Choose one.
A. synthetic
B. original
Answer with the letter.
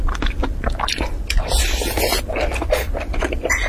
B